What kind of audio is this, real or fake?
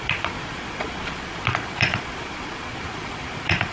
fake